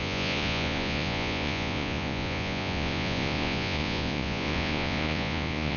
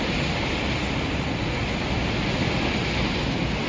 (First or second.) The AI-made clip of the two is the first